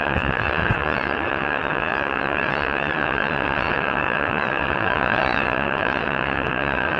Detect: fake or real fake